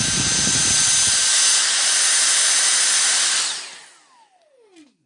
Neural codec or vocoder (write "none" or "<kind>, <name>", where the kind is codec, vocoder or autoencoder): none